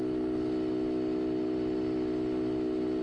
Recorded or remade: recorded